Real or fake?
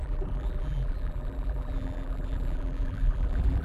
fake